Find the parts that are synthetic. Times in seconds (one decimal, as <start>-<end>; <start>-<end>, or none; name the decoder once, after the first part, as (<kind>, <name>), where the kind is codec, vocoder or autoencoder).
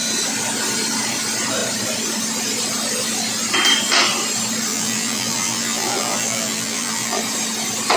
4.7-7.2 (vocoder, BigVGAN v2)